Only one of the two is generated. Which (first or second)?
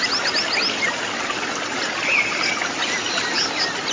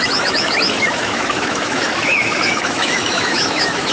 second